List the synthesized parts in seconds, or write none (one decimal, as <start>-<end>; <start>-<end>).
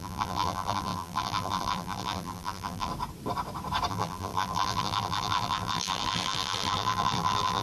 0.0-2.9; 3.9-7.6